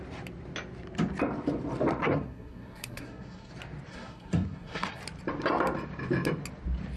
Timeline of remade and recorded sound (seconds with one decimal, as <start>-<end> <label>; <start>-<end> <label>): 0.0-2.0 recorded; 2.0-3.5 remade; 3.5-3.9 recorded; 3.9-5.0 remade; 5.0-7.0 recorded